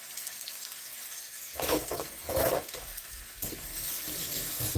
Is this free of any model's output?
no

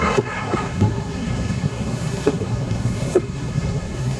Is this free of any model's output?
no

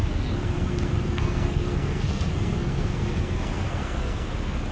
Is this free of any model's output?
no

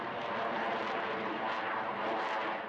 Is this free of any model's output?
yes